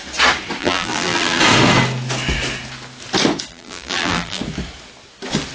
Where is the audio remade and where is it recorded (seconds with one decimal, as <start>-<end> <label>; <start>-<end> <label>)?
0.0-0.6 recorded; 0.6-1.4 remade; 1.4-3.5 recorded; 3.5-4.4 remade; 4.4-5.5 recorded